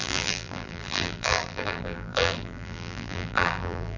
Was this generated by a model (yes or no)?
yes